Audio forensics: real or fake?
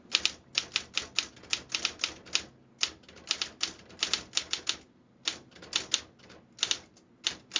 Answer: real